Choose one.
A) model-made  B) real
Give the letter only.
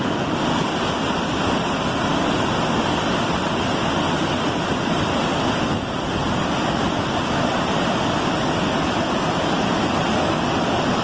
B